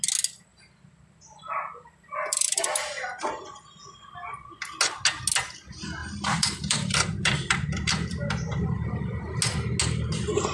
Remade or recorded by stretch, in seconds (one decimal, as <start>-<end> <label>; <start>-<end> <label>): 0.0-0.5 recorded; 0.5-3.3 remade; 3.3-6.0 recorded; 6.0-9.4 remade; 9.4-10.5 recorded